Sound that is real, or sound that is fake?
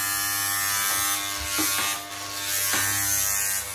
real